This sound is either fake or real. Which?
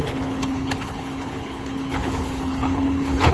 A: fake